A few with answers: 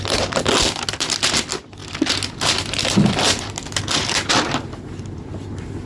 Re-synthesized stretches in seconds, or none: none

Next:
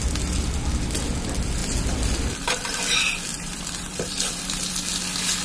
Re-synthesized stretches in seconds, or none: 1.6-2.8 (vocoder, BigVGAN v2); 3.3-4.7

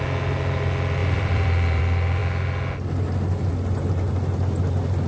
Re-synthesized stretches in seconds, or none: 1.0-1.8 (vocoder, BigVGAN v2)

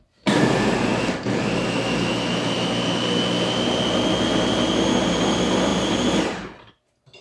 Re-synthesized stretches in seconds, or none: none

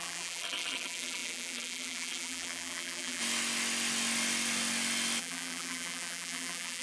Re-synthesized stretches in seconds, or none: 0.0-3.2 (vocoder, BigVGAN v2); 5.2-6.8

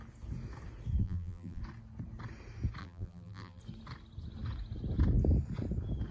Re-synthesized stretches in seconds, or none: 1.0-1.6 (vocoder, BigVGAN v2); 2.8-3.6

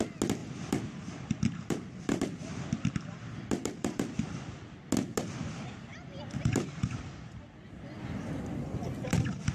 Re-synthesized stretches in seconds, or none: 0.4-4.8 (vocoder, BigVGAN v2); 5.9-9.5

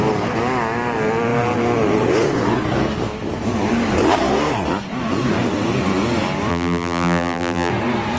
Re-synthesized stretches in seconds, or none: 6.5-7.7 (vocoder, BigVGAN v2)